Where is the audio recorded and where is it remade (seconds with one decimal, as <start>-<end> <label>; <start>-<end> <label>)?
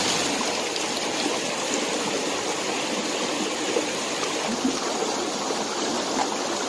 0.0-6.7 recorded